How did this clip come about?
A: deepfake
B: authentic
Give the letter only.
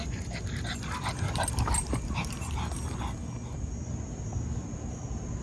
B